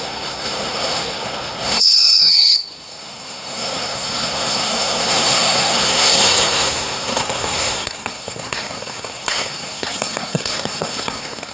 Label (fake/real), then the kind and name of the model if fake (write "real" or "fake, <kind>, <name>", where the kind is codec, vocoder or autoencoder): fake, codec, SNAC